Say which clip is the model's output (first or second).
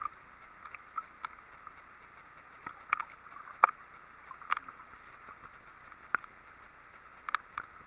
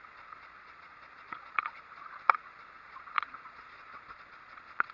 second